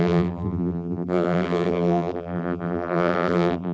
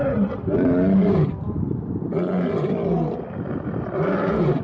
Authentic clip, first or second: second